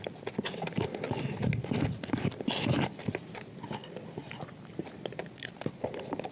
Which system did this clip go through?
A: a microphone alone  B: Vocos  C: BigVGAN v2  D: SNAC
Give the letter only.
A